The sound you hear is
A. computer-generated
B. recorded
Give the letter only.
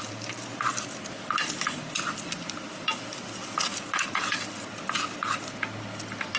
B